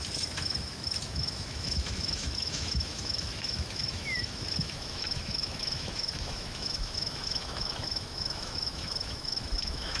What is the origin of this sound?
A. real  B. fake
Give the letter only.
B